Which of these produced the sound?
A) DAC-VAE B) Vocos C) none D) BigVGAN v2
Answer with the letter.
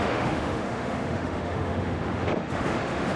A